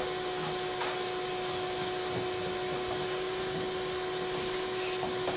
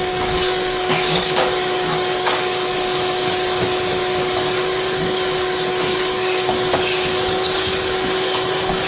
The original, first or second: first